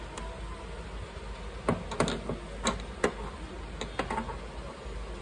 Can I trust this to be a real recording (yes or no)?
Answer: yes